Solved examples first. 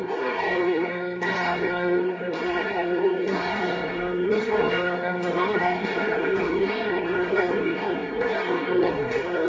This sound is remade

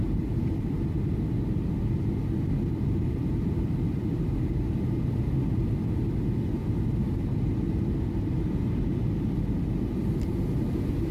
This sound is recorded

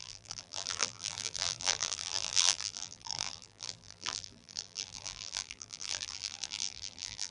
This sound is remade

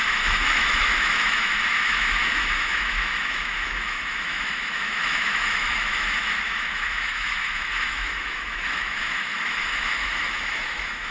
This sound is remade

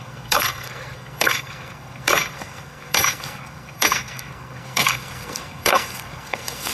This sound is remade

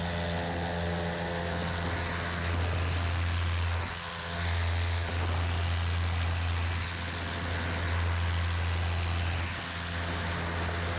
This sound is recorded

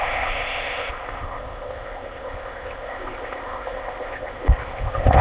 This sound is remade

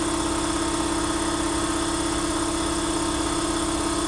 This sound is recorded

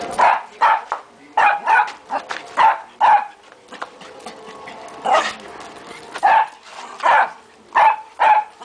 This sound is recorded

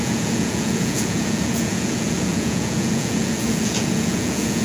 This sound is remade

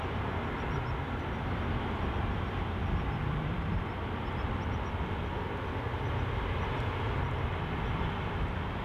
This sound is recorded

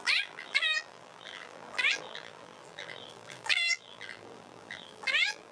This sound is remade